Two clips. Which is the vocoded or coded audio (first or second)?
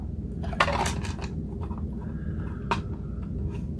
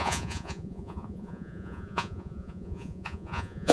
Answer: second